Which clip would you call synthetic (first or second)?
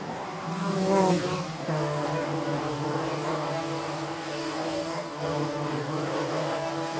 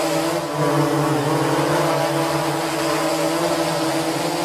first